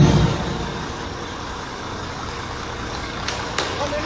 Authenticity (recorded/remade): remade